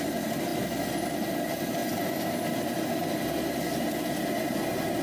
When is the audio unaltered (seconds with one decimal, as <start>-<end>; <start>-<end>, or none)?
0.0-5.0